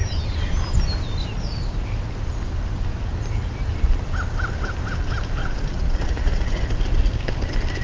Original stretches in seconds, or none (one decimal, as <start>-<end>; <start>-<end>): 0.0-5.4; 6.7-7.8